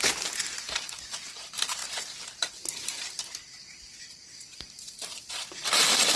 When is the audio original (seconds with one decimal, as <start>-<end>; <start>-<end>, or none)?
0.0-6.2